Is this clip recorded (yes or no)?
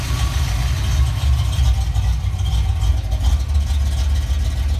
yes